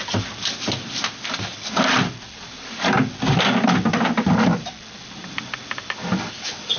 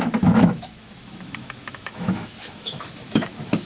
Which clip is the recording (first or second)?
first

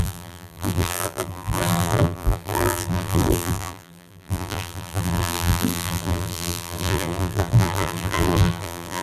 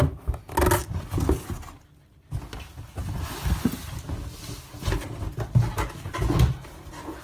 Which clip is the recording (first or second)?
second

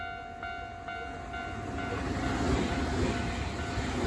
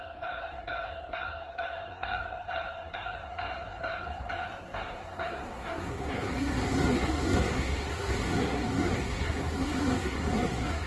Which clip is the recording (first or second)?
first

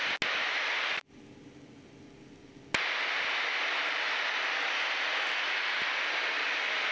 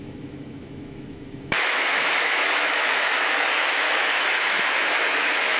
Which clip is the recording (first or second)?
first